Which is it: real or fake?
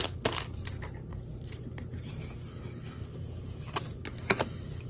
real